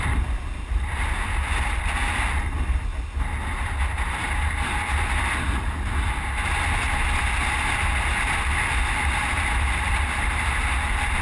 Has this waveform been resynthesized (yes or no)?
no